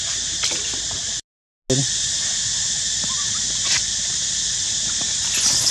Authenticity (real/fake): real